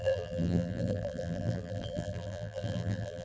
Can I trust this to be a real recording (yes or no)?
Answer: no